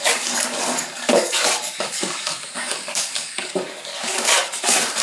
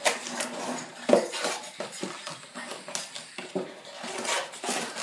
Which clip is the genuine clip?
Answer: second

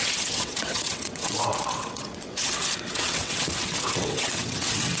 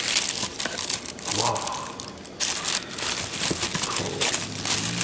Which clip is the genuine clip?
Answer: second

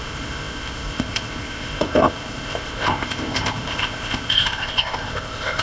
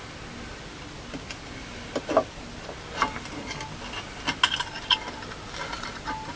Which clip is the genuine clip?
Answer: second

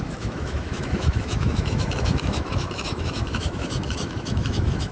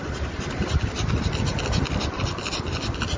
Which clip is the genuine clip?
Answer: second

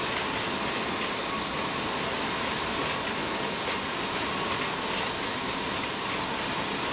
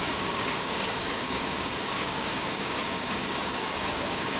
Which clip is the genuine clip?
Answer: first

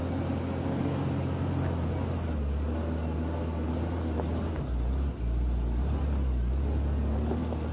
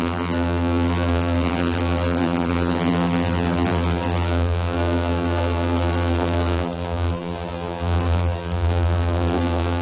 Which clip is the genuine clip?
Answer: first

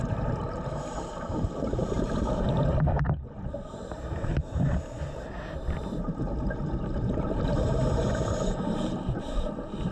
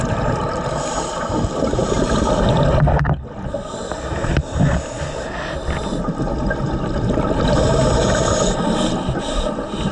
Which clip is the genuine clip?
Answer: second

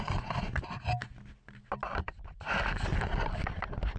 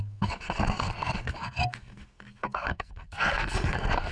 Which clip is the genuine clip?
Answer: first